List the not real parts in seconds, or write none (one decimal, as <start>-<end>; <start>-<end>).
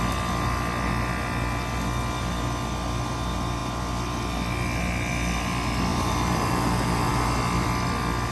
5.9-6.5